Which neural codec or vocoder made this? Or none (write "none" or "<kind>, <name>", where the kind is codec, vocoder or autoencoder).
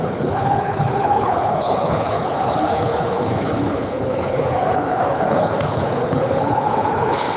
codec, HILCodec